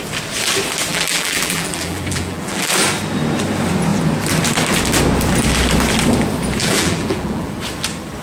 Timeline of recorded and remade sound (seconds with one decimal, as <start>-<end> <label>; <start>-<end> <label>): 0.0-0.9 recorded; 0.9-2.7 remade; 2.7-6.6 recorded; 6.6-7.5 remade; 7.5-8.2 recorded